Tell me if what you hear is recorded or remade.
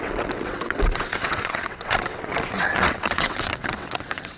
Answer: remade